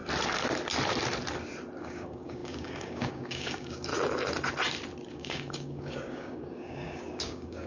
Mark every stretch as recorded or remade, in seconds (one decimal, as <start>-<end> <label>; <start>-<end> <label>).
0.0-1.8 recorded; 1.8-3.9 remade; 3.9-5.1 recorded; 5.1-7.7 remade

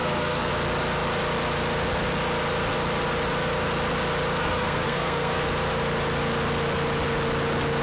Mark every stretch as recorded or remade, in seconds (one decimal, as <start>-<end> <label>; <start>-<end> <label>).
0.0-0.5 remade; 0.5-4.4 recorded; 4.4-5.4 remade; 5.4-7.8 recorded

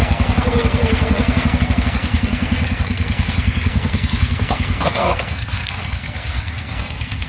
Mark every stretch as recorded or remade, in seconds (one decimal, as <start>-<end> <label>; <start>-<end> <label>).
0.0-7.3 remade

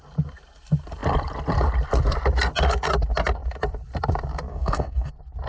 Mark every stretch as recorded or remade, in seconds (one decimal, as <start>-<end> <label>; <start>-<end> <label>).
0.0-4.5 recorded; 4.5-5.1 remade; 5.1-5.5 recorded